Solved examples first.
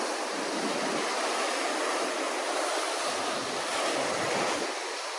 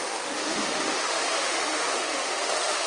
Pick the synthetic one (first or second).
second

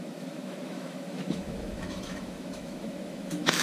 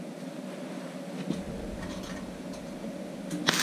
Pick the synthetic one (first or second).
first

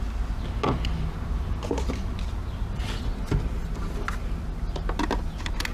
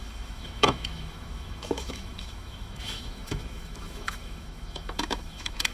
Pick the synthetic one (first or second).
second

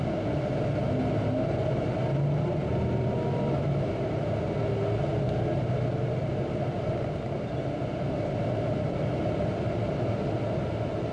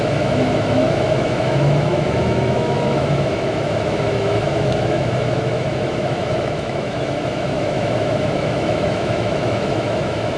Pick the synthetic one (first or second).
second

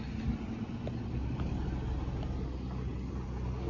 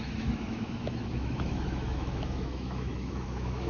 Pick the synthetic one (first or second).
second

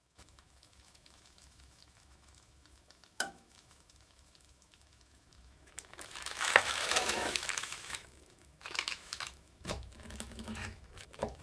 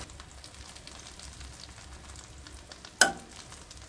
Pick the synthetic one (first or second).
first